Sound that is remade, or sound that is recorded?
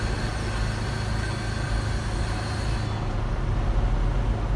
recorded